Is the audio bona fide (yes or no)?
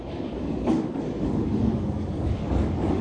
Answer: no